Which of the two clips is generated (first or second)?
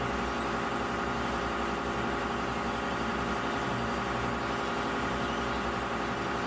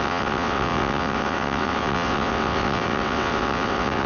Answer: second